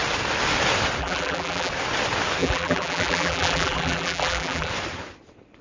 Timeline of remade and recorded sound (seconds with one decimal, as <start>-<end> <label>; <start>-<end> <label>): 0.0-1.0 recorded; 1.0-1.7 remade; 1.7-2.4 recorded; 2.4-4.7 remade; 4.7-5.6 recorded